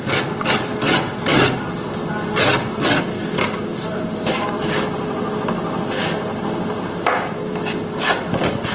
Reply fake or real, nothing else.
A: real